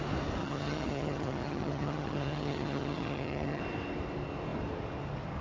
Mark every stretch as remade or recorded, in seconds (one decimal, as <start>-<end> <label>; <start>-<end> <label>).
0.0-0.4 recorded; 0.4-3.6 remade; 3.6-5.4 recorded

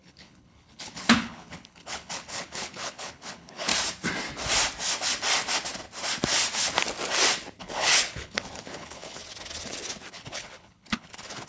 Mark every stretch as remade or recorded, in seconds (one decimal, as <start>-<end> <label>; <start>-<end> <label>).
0.0-3.7 remade; 3.7-7.6 recorded; 7.6-9.2 remade; 9.2-10.1 recorded; 10.1-11.5 remade